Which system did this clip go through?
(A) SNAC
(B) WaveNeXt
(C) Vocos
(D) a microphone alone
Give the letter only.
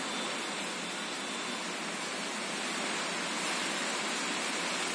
D